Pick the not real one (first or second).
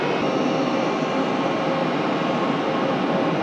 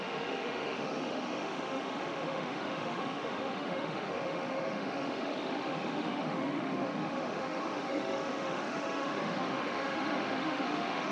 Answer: second